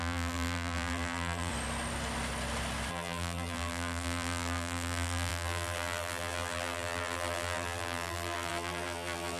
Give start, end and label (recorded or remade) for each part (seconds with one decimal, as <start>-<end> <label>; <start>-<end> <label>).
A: 0.0-1.5 remade; 1.5-2.9 recorded; 2.9-9.4 remade